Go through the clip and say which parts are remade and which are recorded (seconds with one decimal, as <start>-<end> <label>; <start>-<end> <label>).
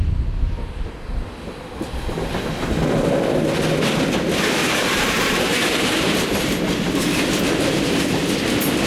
0.0-4.6 recorded; 4.6-7.4 remade; 7.4-8.9 recorded